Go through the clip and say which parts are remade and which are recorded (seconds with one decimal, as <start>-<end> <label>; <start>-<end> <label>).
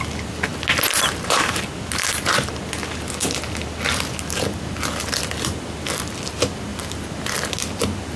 0.0-8.2 recorded